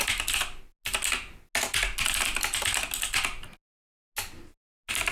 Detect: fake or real real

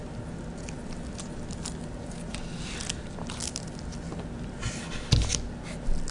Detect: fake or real real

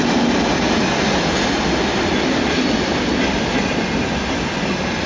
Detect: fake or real real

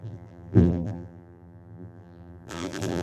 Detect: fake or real fake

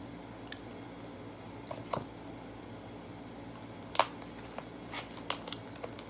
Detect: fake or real real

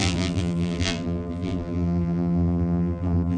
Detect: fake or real fake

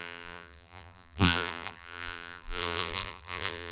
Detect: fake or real fake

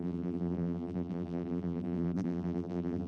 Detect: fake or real fake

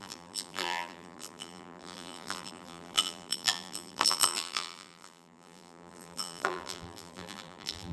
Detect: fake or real fake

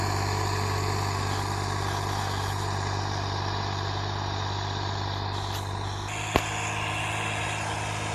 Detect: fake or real real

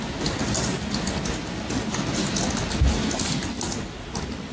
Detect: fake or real real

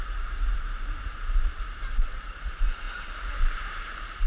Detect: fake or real fake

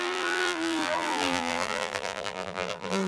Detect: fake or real fake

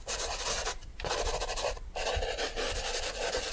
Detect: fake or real real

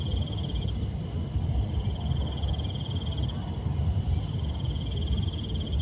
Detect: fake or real real